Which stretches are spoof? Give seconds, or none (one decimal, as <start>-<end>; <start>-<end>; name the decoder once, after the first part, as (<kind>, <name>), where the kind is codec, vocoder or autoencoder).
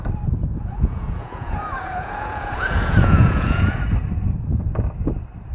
0.5-3.8 (vocoder, Vocos)